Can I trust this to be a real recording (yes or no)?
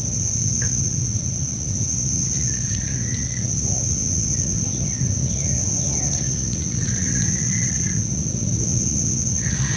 no